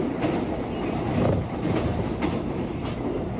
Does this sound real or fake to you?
real